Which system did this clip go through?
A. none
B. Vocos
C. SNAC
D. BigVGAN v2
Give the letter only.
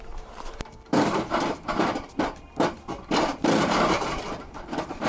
D